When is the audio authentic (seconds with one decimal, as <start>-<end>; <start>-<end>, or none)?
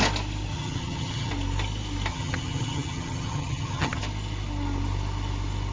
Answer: 0.0-0.5; 1.3-2.1; 4.0-5.7